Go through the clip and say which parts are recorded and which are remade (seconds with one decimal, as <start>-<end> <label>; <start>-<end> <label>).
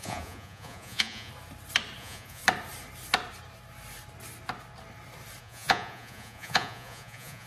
0.0-1.3 remade; 1.3-2.0 recorded; 2.0-2.4 remade; 2.4-5.4 recorded; 5.4-7.5 remade